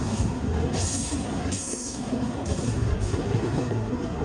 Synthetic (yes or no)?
yes